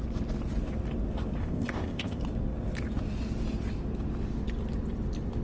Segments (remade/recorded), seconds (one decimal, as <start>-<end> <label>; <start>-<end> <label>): 0.0-1.4 recorded; 1.4-2.2 remade; 2.2-5.4 recorded